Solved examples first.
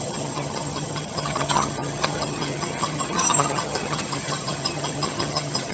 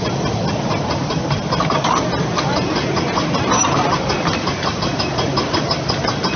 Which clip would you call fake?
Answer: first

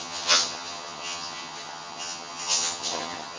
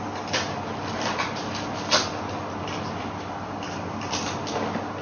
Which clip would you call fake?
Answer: first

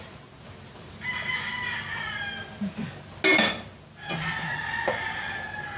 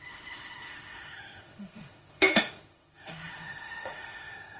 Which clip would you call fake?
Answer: second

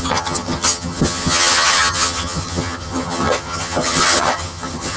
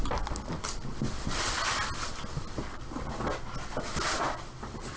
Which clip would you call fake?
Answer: first